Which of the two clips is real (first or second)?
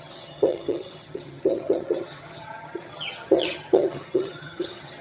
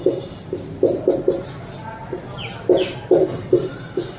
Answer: second